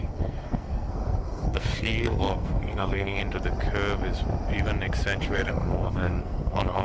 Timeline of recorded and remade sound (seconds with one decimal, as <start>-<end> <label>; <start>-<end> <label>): 0.0-3.2 remade; 3.2-5.2 recorded; 5.2-6.8 remade